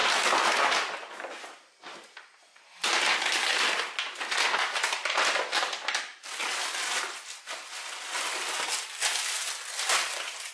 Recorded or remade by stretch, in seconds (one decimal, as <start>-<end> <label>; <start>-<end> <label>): 0.0-10.5 recorded